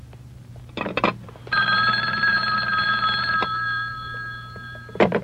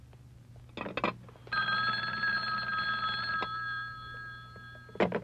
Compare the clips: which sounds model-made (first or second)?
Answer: first